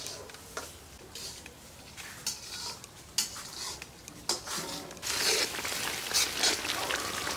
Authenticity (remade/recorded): recorded